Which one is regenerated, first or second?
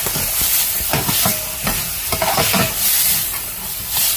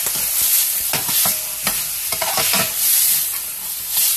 first